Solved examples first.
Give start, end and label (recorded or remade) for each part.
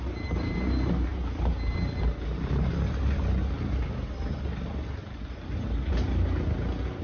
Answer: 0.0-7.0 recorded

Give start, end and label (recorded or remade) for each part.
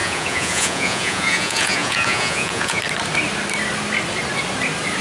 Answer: 0.0-2.8 remade; 2.8-5.0 recorded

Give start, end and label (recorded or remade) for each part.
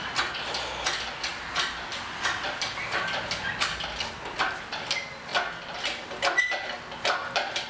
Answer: 0.0-7.7 recorded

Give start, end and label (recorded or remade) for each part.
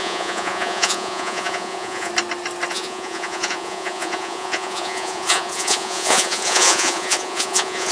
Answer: 0.0-2.1 remade; 2.1-2.7 recorded; 2.7-7.9 remade